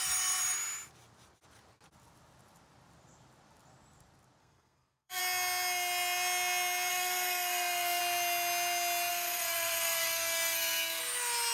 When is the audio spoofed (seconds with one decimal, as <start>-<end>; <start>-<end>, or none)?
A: 4.4-5.2; 6.9-8.0; 9.1-11.0